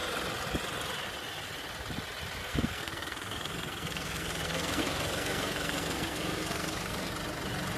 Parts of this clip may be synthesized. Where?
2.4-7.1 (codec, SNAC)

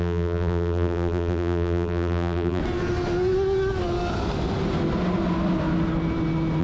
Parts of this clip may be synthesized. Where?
0.0-2.6 (vocoder, BigVGAN v2)

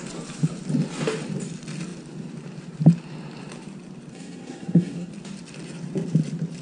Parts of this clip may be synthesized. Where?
4.1-5.1 (codec, SNAC)

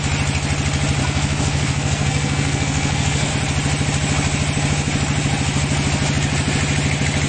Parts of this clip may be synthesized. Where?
1.0-3.3 (codec, SNAC)

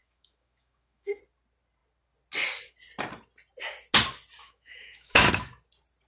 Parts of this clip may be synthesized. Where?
0.0-1.2 (autoencoder, DAC-VAE); 4.4-5.3

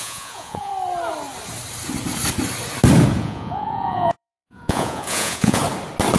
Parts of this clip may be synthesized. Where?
0.0-0.7 (vocoder, Vocos); 3.2-5.6

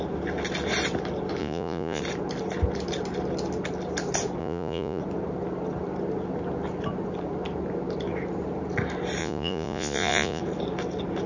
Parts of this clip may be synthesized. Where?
1.4-2.0 (vocoder, Vocos); 4.4-5.0; 9.2-10.4